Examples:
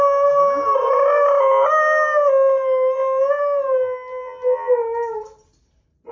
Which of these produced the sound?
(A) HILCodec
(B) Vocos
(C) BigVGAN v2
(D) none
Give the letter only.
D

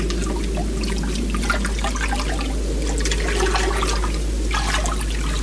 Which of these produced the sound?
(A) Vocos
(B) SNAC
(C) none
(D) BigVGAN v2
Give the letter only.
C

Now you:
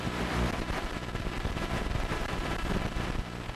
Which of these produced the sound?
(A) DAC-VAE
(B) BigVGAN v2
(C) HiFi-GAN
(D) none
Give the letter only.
B